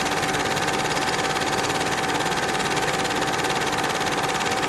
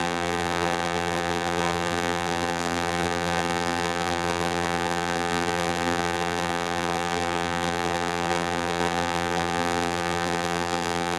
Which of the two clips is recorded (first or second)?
first